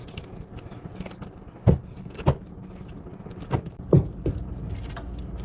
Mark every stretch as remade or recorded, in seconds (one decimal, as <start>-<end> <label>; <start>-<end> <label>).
0.0-5.4 recorded